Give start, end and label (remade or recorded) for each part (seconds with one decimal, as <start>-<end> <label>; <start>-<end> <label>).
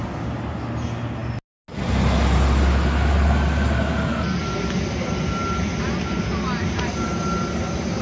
0.0-8.0 recorded